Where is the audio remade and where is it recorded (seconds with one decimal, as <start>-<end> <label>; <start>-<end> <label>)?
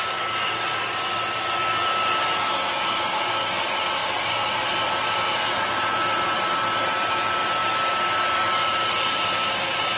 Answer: 0.0-10.0 recorded